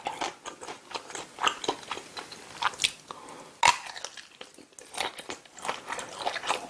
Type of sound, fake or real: real